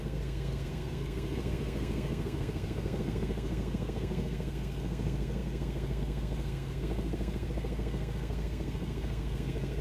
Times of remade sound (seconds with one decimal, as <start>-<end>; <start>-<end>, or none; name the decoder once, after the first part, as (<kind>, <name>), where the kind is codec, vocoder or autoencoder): 0.0-9.8 (codec, SNAC)